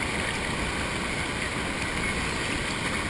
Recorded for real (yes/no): yes